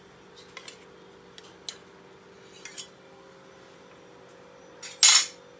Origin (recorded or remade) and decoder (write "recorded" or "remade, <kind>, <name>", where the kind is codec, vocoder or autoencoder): recorded